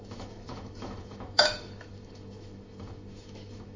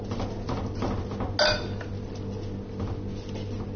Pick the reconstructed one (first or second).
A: first